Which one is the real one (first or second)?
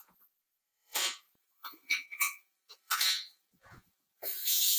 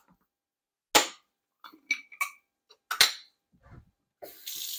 second